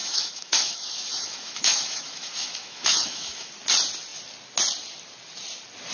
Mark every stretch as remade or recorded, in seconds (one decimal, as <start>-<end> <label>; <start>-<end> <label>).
0.0-3.5 remade; 3.5-5.9 recorded